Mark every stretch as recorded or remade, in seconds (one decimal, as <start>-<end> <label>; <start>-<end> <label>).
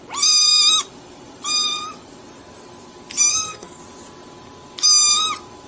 0.0-3.3 recorded; 3.3-3.8 remade; 3.8-5.7 recorded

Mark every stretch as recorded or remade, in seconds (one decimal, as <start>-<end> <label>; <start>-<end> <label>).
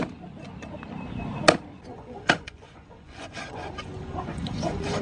0.0-1.9 recorded; 1.9-5.0 remade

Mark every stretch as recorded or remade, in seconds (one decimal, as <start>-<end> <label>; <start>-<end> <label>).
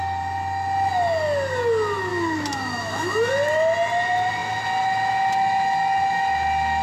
0.0-2.1 recorded; 2.1-3.3 remade; 3.3-6.8 recorded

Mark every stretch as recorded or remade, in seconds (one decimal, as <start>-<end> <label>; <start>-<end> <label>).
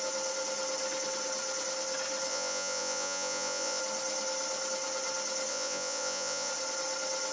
0.0-2.3 recorded; 2.3-3.8 remade; 3.8-5.5 recorded; 5.5-6.5 remade; 6.5-7.3 recorded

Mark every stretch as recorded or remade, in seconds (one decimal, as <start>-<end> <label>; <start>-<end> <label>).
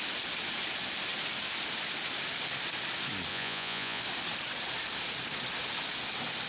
0.0-3.3 recorded; 3.3-4.0 remade; 4.0-6.5 recorded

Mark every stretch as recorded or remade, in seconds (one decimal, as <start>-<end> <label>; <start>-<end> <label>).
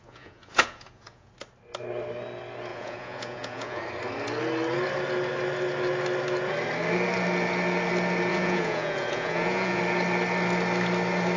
0.0-1.3 remade; 1.3-2.7 recorded; 2.7-3.8 remade; 3.8-8.3 recorded; 8.3-9.8 remade; 9.8-11.4 recorded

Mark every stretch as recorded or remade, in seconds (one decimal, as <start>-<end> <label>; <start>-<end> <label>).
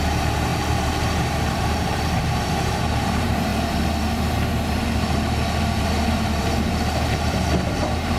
0.0-3.5 remade; 3.5-5.6 recorded; 5.6-8.2 remade